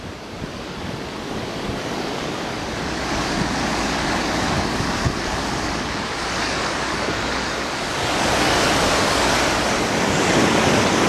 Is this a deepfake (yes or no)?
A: yes